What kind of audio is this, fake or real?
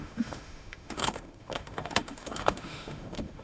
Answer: fake